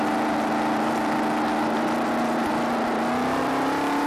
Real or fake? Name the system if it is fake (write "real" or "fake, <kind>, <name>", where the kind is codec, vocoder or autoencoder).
real